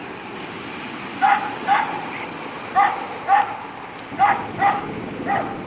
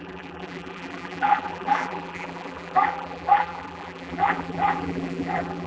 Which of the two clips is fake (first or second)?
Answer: second